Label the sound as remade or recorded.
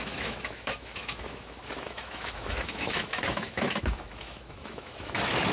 remade